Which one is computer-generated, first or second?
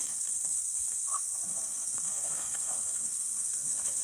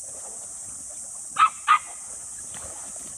first